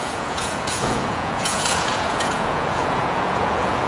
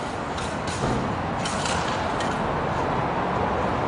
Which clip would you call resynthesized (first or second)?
first